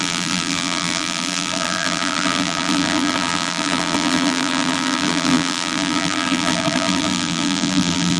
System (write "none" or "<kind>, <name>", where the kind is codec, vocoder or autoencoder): vocoder, BigVGAN v2